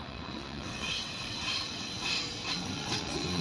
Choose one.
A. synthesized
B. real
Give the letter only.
A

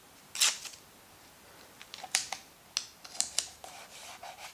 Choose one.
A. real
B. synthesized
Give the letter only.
A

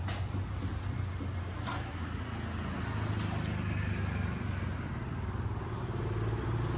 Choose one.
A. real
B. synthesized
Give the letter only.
A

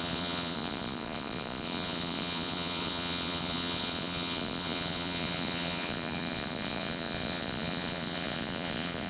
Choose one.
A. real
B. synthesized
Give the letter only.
B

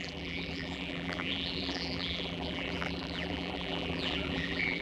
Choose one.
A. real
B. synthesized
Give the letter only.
B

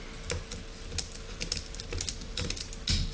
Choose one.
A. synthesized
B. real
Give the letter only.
B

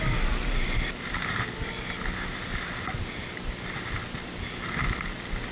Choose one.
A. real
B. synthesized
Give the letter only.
A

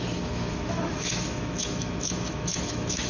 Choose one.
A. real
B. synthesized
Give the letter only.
B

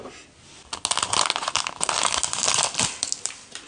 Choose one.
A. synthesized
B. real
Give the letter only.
B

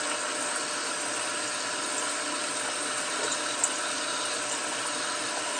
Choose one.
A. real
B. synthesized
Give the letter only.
A